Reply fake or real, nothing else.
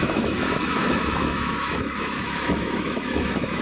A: fake